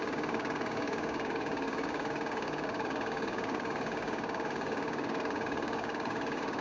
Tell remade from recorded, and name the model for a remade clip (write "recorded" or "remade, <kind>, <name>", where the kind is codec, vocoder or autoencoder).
remade, codec, DAC